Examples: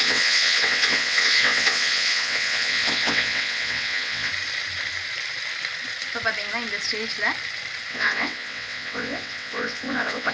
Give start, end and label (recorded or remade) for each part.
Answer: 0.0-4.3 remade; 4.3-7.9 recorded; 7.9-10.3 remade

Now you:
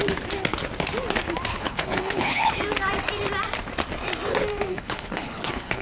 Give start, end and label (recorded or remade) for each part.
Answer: 0.0-1.5 recorded; 1.5-2.5 remade; 2.5-4.7 recorded; 4.7-5.8 remade

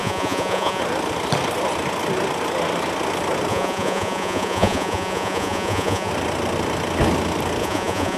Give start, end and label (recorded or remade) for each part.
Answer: 0.0-0.8 remade; 0.8-3.5 recorded; 3.5-6.1 remade; 6.1-7.6 recorded; 7.6-8.2 remade

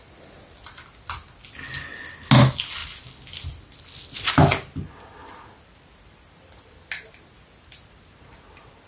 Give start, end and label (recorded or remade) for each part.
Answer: 0.0-8.9 recorded